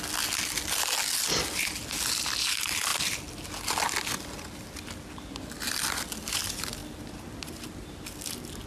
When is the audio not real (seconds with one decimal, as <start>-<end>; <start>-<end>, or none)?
none